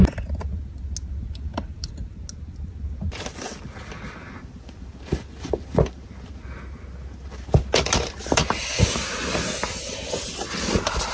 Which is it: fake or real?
real